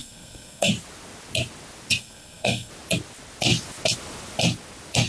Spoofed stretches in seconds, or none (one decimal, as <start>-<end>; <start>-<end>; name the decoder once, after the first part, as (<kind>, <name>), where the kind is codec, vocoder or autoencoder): 0.0-0.7 (codec, SNAC); 2.0-2.7